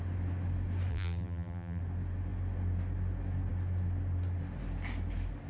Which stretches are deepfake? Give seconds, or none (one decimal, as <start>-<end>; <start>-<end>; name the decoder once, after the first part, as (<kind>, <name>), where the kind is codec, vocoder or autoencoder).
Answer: 0.9-1.8 (vocoder, BigVGAN v2)